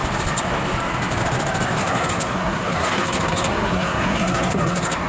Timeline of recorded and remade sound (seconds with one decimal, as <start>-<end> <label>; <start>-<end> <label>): 0.0-1.8 recorded; 1.8-5.1 remade